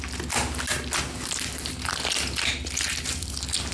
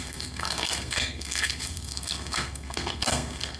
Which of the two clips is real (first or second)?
first